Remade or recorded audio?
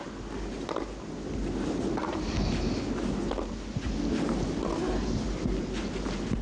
recorded